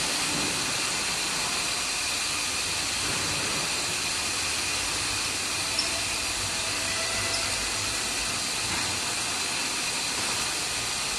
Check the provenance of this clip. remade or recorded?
recorded